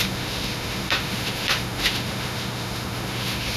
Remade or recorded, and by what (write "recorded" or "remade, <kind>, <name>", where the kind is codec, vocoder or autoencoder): remade, autoencoder, DAC-VAE